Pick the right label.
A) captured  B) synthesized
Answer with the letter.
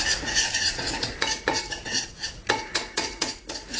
B